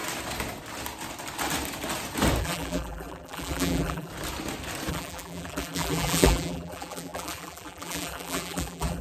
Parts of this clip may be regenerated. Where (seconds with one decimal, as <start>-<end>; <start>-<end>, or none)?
2.4-4.1; 4.9-9.0